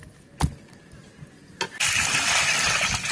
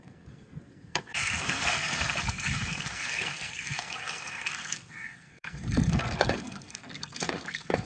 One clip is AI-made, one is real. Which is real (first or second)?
first